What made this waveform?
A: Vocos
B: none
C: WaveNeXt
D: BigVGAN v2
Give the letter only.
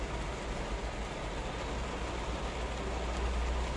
B